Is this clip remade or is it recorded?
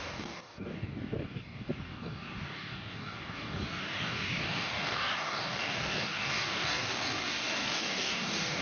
remade